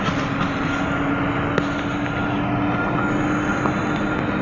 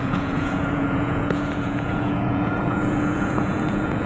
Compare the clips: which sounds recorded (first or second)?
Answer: first